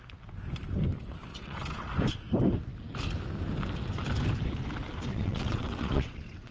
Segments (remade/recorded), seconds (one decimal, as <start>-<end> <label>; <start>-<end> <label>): 0.0-1.3 recorded; 1.3-1.9 remade; 1.9-5.1 recorded; 5.1-6.5 remade